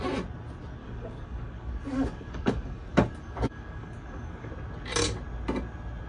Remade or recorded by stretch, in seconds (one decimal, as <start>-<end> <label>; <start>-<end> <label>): 0.0-0.8 recorded; 0.8-4.5 remade; 4.5-6.1 recorded